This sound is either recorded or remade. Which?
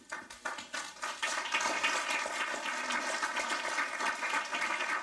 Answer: recorded